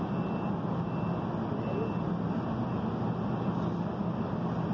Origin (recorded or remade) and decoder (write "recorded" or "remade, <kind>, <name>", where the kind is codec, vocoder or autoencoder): recorded